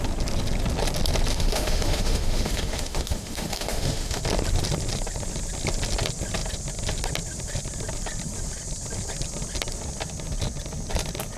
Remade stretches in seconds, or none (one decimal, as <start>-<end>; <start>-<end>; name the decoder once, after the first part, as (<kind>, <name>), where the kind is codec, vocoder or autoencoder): 1.3-4.2 (autoencoder, DAC-VAE)